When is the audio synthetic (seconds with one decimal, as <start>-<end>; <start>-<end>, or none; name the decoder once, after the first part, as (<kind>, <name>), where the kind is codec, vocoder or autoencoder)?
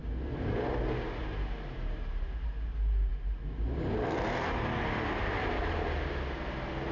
none